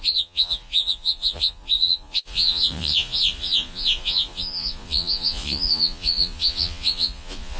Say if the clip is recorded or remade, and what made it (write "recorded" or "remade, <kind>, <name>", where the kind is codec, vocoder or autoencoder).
remade, vocoder, Vocos